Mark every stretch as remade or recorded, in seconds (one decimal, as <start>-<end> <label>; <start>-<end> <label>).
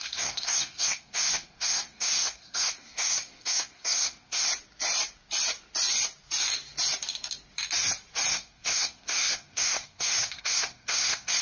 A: 0.0-4.5 remade; 4.5-8.3 recorded; 8.3-11.4 remade